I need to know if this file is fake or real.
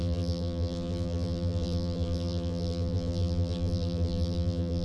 fake